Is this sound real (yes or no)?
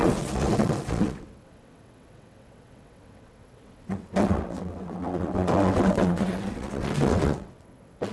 no